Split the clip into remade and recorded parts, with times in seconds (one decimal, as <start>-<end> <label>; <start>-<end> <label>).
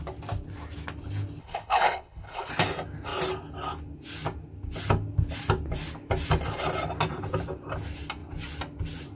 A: 0.0-1.4 recorded; 1.4-2.5 remade; 2.5-9.2 recorded